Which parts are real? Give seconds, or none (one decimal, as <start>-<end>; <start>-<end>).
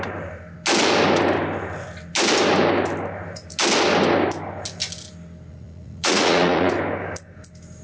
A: 0.0-5.5; 6.7-7.8